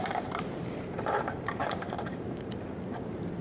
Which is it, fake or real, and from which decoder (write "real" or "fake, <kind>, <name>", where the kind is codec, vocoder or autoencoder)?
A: fake, vocoder, BigVGAN v2